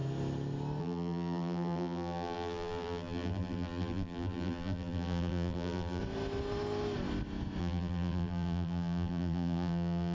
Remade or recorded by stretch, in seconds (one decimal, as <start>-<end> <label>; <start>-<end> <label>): 0.0-0.8 recorded; 0.8-6.0 remade; 6.0-7.6 recorded; 7.6-10.1 remade